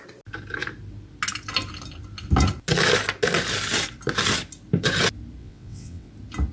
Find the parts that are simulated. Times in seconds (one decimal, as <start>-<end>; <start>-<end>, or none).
5.4-6.1